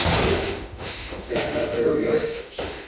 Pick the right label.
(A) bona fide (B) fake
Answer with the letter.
B